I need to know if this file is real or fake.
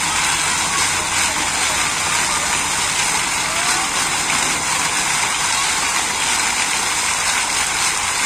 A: real